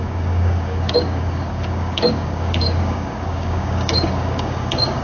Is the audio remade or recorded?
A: remade